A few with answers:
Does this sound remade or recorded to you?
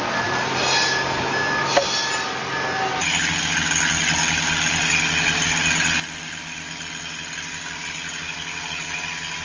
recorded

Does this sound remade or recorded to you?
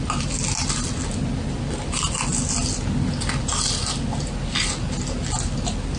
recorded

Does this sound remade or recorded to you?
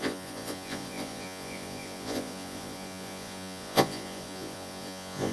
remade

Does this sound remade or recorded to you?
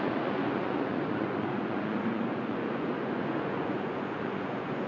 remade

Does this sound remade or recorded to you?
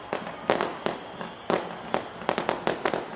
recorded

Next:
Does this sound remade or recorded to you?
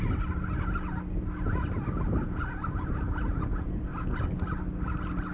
recorded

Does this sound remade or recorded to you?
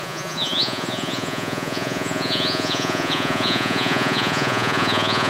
remade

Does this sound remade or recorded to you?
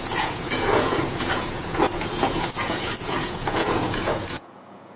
remade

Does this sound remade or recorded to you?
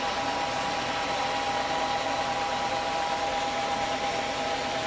recorded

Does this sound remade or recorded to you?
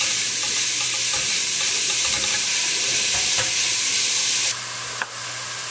recorded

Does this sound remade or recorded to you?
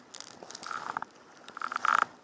recorded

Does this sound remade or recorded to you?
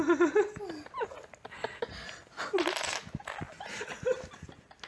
recorded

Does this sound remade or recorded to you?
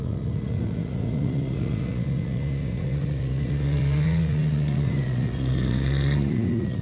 remade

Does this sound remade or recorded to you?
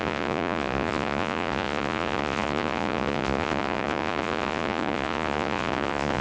remade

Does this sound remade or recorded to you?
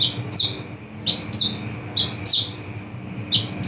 recorded